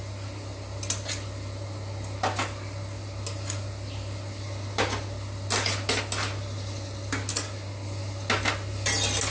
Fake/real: real